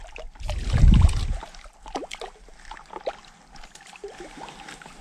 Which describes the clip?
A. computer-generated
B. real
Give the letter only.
B